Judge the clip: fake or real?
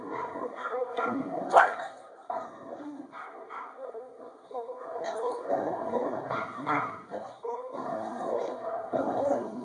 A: fake